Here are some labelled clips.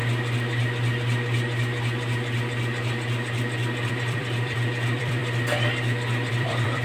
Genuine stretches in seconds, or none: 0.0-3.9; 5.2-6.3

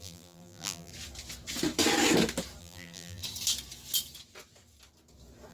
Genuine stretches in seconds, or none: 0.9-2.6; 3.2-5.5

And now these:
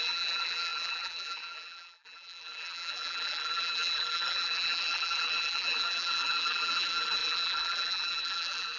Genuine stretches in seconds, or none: none

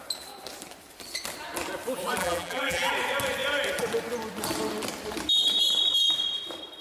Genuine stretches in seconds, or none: 0.0-2.2; 2.9-6.8

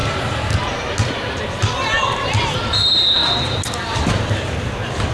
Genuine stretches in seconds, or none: 0.0-5.1

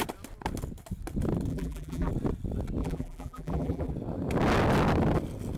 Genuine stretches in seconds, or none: 0.0-1.5; 2.1-2.8; 3.9-5.6